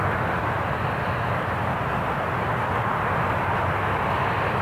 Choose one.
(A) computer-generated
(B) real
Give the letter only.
B